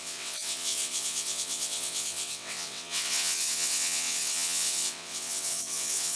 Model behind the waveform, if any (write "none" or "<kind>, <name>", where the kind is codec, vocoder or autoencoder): vocoder, WaveNeXt